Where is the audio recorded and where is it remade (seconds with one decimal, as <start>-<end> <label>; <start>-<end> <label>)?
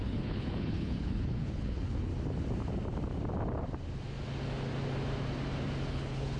0.0-2.1 remade; 2.1-5.9 recorded; 5.9-6.4 remade